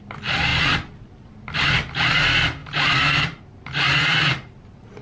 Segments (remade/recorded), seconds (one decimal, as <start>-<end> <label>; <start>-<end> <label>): 0.0-5.0 recorded